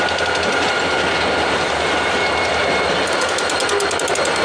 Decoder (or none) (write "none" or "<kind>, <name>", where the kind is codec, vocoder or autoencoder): none